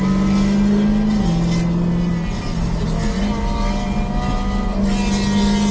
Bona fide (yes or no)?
yes